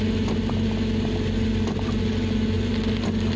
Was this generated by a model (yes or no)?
no